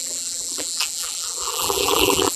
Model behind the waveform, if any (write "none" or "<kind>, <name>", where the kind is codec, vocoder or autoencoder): vocoder, BigVGAN v2